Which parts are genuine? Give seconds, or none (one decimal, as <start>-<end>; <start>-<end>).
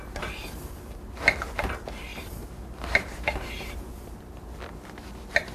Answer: 0.0-2.1; 3.9-5.5